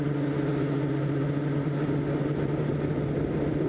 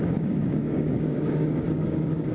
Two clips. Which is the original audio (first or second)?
first